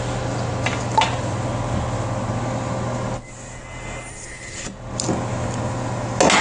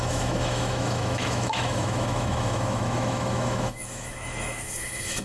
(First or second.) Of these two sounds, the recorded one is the first